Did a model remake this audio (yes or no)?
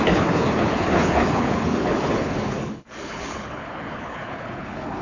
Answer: yes